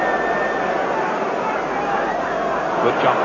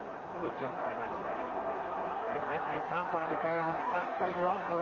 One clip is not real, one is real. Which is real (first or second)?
first